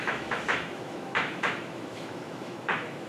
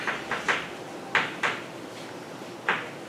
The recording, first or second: second